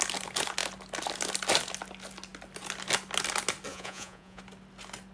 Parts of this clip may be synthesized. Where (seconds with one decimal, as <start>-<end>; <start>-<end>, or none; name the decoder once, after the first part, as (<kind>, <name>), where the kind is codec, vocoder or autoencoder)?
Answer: 3.7-4.4 (vocoder, Vocos)